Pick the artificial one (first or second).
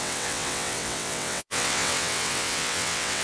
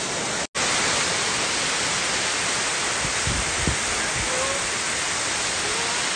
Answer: first